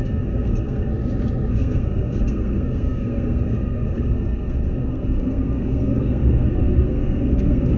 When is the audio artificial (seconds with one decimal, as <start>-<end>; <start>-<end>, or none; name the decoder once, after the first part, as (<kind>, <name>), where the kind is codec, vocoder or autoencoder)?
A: 0.0-0.9 (codec, SNAC); 1.5-7.8